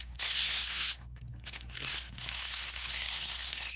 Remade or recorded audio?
remade